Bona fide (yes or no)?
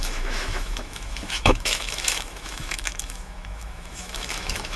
no